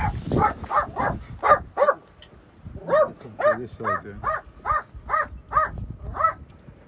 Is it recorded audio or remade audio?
recorded